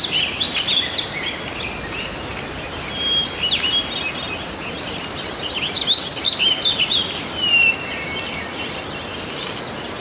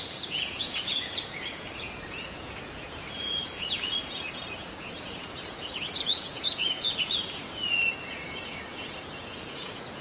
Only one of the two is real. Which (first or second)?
first